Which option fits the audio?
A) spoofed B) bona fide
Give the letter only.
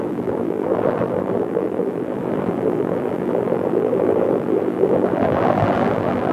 A